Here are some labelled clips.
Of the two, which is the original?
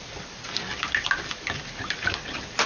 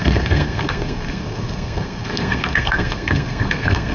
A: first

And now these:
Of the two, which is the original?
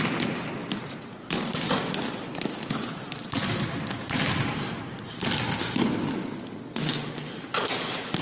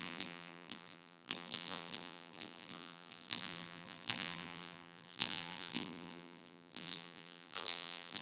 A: first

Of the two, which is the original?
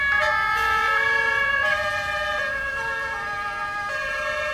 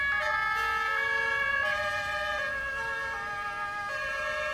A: second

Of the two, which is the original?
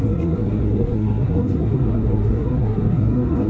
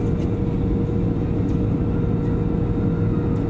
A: second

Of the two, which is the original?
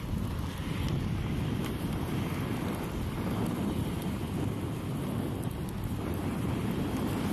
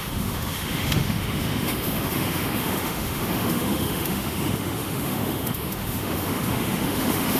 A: first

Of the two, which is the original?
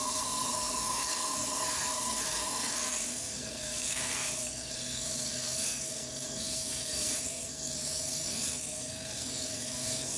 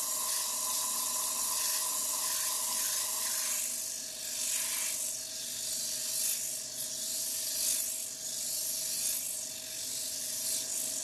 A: second